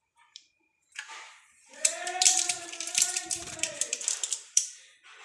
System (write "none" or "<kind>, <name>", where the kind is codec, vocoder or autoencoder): vocoder, BigVGAN v2